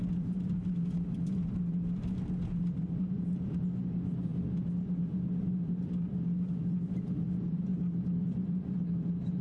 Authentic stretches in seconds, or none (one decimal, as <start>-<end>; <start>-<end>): 4.3-5.4; 6.1-7.2; 7.7-8.2